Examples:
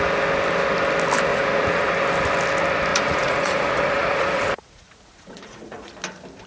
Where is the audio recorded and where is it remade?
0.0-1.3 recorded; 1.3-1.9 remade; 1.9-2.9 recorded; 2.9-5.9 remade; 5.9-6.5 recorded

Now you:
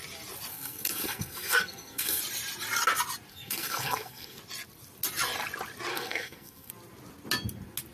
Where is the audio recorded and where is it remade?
0.0-0.5 recorded; 0.5-2.2 remade; 2.2-3.3 recorded; 3.3-4.4 remade; 4.4-5.9 recorded; 5.9-6.7 remade; 6.7-7.9 recorded

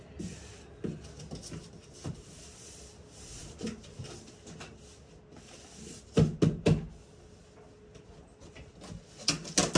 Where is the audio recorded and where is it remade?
0.0-9.8 recorded

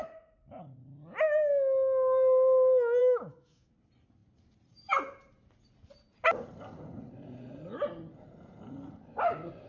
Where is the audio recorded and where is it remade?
0.0-3.0 recorded; 3.0-3.7 remade; 3.7-9.7 recorded

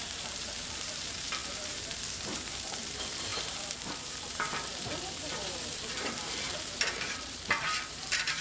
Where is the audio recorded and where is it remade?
0.0-8.4 remade

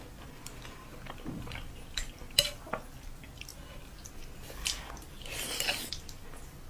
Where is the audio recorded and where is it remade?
0.0-6.7 recorded

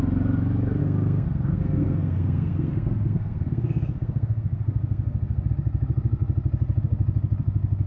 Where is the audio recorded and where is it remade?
0.0-0.8 recorded; 0.8-5.5 remade; 5.5-7.9 recorded

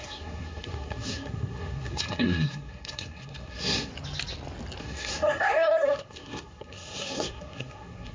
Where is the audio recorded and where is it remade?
0.0-3.9 remade; 3.9-4.8 recorded; 4.8-8.1 remade